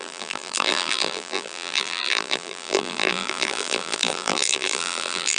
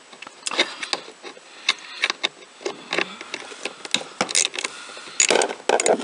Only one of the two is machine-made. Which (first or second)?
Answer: first